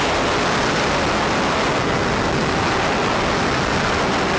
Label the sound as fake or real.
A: real